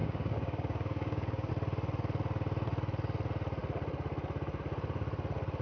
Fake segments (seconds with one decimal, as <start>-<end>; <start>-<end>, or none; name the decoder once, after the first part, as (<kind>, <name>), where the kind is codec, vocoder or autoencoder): 0.0-1.5 (codec, DAC)